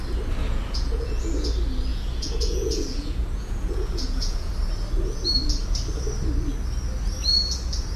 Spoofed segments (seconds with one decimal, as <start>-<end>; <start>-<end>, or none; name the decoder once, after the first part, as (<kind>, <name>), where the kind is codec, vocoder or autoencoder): 0.4-1.2 (vocoder, Vocos); 1.9-4.5